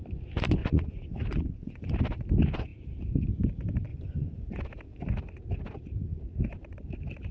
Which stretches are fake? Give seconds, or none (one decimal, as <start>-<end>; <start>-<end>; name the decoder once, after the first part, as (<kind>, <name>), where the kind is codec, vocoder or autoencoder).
0.6-1.9 (vocoder, Vocos); 3.9-4.6